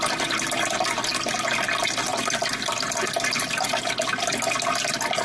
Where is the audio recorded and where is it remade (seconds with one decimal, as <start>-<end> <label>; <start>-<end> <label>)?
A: 0.0-5.2 recorded